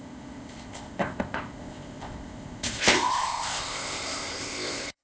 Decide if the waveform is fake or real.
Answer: fake